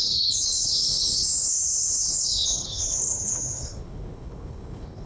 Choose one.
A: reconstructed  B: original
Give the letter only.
A